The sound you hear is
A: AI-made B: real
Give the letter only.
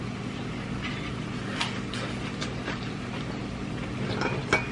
B